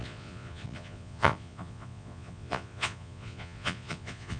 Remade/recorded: remade